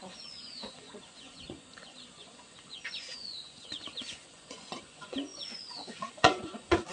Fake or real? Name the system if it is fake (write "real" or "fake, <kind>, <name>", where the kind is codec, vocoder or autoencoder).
fake, vocoder, Vocos